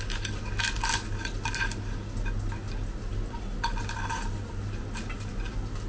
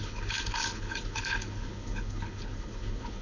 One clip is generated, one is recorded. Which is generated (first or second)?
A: second